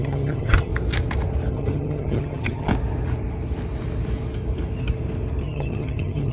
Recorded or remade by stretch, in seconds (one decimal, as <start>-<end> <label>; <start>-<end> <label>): 0.0-0.7 remade; 0.7-1.5 recorded; 1.5-2.7 remade; 2.7-5.4 recorded; 5.4-6.3 remade